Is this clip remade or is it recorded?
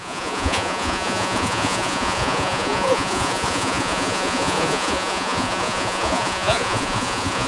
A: remade